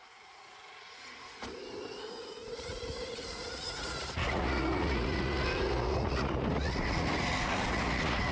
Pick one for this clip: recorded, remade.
remade